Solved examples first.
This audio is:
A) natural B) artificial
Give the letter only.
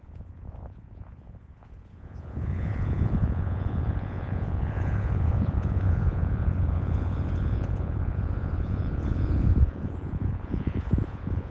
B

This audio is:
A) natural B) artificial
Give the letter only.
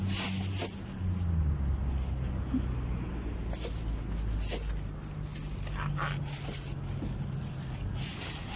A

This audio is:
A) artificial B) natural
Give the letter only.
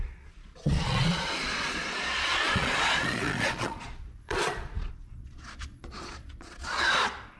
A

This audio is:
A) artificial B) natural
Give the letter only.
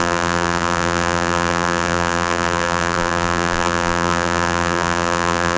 A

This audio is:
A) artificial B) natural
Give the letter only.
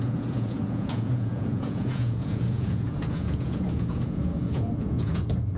A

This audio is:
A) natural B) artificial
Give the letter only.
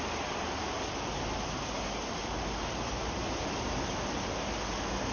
A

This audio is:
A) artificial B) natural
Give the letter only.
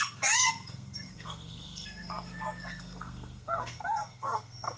A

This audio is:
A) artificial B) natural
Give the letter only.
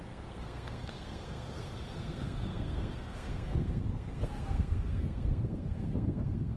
A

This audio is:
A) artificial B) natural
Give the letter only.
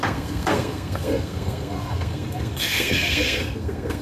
A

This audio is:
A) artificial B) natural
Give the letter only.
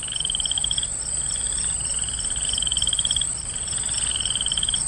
B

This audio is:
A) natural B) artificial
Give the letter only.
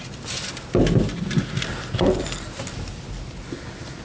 A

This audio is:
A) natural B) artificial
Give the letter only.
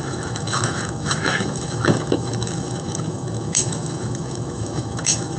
B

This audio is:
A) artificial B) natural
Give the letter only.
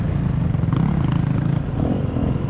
B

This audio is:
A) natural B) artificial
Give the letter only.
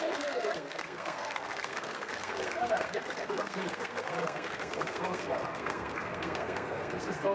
B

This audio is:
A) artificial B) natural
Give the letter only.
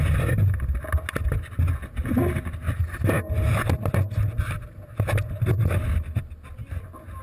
B